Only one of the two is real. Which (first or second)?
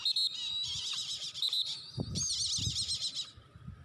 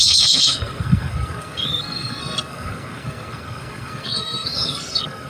first